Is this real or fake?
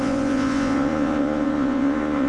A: fake